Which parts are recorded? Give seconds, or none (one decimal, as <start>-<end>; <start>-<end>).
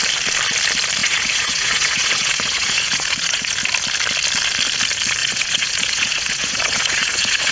0.0-1.0; 3.5-5.2